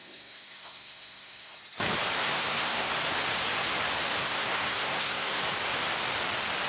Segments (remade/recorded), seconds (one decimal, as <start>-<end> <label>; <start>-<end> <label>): 0.0-1.6 remade; 1.6-2.2 recorded; 2.2-2.9 remade; 2.9-4.2 recorded; 4.2-5.4 remade; 5.4-6.7 recorded